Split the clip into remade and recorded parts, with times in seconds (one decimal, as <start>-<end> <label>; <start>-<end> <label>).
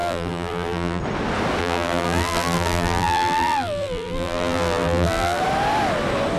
0.0-1.0 remade; 1.0-1.6 recorded; 1.6-5.4 remade; 5.4-6.4 recorded